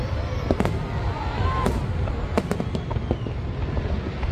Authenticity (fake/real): real